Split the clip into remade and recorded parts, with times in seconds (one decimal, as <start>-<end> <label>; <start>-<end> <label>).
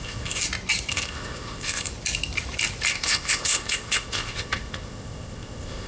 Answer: 0.0-0.4 remade; 0.4-0.9 recorded; 0.9-1.9 remade; 1.9-2.9 recorded; 2.9-5.9 remade